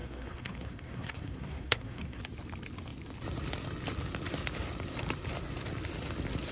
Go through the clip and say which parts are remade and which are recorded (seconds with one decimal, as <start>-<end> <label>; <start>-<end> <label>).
0.0-2.2 remade; 2.2-6.5 recorded